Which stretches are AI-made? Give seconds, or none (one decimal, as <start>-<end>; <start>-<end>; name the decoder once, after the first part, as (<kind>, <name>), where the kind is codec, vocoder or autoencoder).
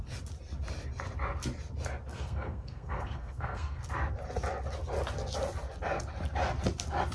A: 2.1-3.8 (codec, SNAC)